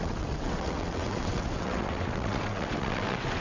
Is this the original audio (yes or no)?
no